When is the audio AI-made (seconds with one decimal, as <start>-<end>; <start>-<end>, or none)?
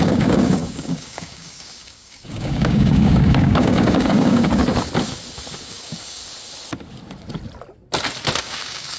0.0-4.6; 5.6-6.2; 8.4-9.0